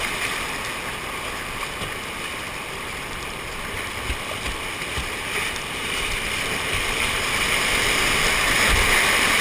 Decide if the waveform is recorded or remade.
remade